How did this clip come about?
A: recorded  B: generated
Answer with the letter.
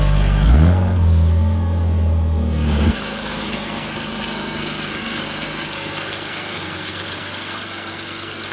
B